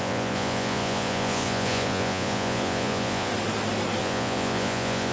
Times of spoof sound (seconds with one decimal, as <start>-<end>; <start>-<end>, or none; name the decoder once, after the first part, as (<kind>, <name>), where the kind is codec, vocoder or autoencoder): 0.0-3.3 (vocoder, Vocos); 4.0-5.1